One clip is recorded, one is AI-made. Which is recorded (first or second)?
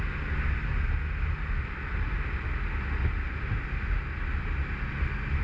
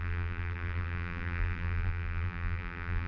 first